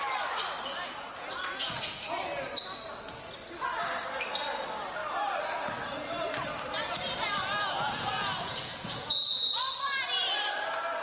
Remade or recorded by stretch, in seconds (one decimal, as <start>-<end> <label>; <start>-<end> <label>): 0.0-0.8 recorded; 0.8-1.9 remade; 1.9-7.5 recorded; 7.5-9.6 remade; 9.6-11.0 recorded